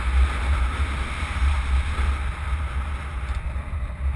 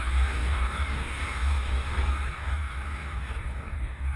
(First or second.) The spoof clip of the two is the second